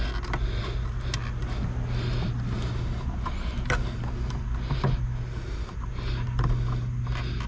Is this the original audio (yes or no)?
yes